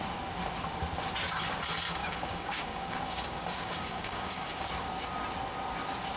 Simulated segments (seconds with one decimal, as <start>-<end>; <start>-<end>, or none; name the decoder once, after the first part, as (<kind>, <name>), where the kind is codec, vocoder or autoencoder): 2.0-4.7 (codec, DAC)